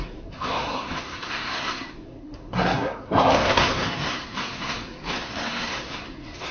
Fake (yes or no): yes